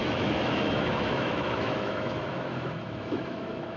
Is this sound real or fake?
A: fake